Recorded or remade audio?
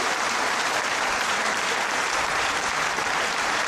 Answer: remade